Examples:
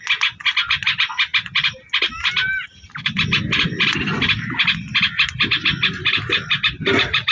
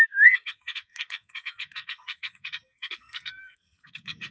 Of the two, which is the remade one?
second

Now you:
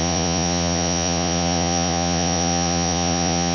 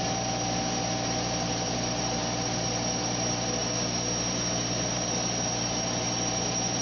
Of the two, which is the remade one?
first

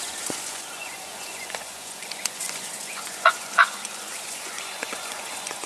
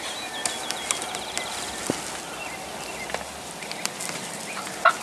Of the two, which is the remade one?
first